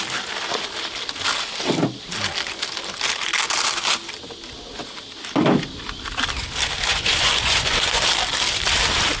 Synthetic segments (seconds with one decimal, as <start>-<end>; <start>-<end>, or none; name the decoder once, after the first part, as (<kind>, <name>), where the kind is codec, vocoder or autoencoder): 6.9-8.0 (vocoder, Vocos)